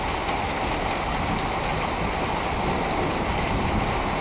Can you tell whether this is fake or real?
real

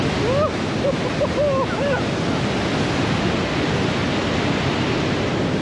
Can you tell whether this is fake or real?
real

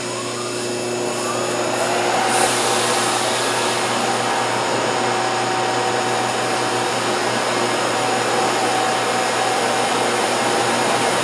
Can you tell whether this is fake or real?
real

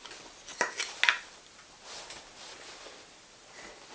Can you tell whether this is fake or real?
real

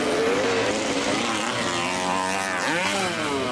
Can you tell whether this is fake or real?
real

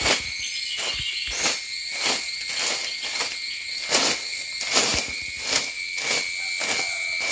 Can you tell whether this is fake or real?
real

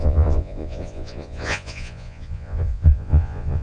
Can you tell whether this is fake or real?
fake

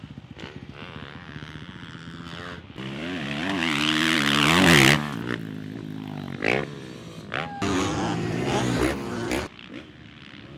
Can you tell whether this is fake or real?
real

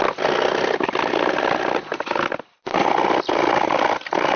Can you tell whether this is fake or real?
real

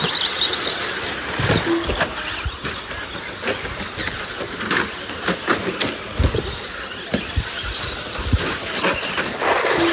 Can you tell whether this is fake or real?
real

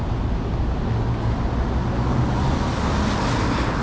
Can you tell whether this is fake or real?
real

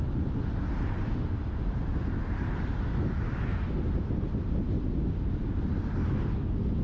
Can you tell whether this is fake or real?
real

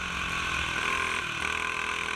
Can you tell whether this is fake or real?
real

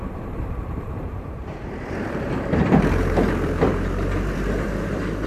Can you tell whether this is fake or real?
fake